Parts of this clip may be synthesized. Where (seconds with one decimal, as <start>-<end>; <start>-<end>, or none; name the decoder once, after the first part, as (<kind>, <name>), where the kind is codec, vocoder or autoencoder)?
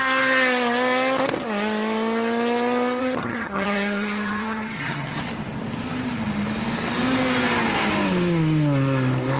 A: 3.0-5.2 (vocoder, HiFi-GAN)